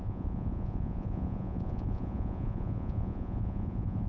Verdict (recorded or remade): remade